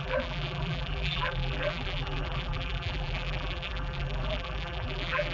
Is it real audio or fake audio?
fake